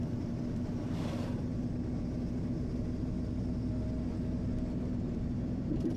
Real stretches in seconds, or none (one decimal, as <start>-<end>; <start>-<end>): 1.5-5.1